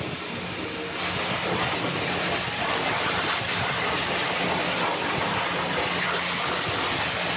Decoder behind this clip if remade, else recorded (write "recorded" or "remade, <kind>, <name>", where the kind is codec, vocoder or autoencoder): recorded